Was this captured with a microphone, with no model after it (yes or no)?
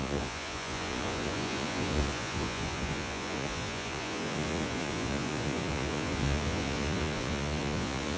no